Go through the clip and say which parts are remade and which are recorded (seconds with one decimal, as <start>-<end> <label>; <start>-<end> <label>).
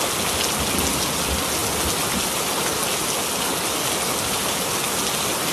0.0-5.5 recorded